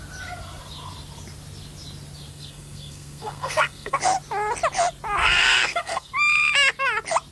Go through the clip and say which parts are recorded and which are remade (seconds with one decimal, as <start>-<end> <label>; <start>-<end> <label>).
0.0-2.3 recorded; 2.3-4.0 remade; 4.0-5.2 recorded; 5.2-6.1 remade; 6.1-7.3 recorded